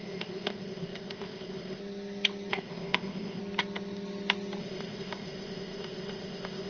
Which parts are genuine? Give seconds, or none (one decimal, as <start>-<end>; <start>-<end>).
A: 1.8-2.5; 3.4-4.6